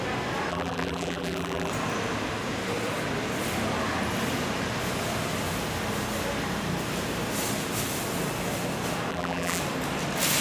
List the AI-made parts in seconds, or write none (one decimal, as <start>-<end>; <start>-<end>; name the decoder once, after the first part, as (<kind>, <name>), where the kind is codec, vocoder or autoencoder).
0.5-1.7 (vocoder, BigVGAN v2); 9.1-9.6

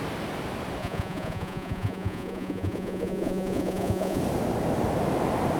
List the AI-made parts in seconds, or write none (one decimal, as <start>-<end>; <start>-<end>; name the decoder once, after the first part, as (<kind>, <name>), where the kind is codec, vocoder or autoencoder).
0.8-4.2 (vocoder, Vocos)

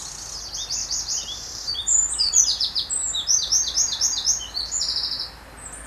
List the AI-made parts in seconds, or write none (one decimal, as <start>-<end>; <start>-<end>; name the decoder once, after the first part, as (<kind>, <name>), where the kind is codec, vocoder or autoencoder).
0.8-2.3 (vocoder, BigVGAN v2); 3.0-4.6

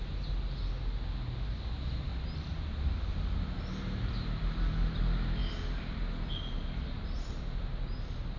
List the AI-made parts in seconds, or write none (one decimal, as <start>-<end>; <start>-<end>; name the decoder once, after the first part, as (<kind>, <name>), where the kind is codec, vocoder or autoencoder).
none

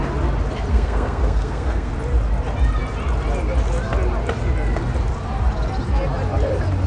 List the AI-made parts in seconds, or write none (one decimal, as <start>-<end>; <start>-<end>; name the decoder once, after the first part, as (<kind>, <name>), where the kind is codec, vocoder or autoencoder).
0.7-1.9 (codec, SNAC)

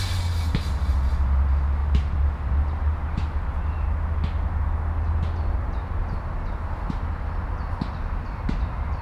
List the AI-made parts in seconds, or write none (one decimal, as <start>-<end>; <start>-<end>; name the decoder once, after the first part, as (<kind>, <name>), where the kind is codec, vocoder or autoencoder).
1.8-3.5 (vocoder, BigVGAN v2)

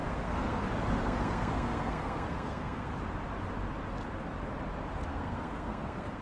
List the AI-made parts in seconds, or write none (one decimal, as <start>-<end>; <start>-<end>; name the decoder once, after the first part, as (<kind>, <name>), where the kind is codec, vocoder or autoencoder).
0.0-0.6 (codec, SNAC); 1.0-2.9; 5.1-6.2